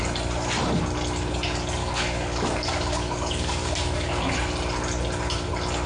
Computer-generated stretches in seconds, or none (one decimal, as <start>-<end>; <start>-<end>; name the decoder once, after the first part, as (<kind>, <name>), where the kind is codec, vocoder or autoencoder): 1.8-4.3 (codec, DAC)